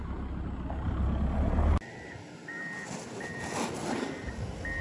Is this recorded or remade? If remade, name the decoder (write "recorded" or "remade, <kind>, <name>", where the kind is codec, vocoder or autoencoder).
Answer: recorded